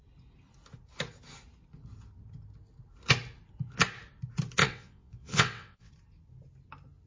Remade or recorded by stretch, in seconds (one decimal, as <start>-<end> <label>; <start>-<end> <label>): 0.0-4.6 recorded; 4.6-5.9 remade; 5.9-7.1 recorded